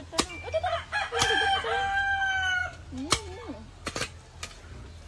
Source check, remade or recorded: recorded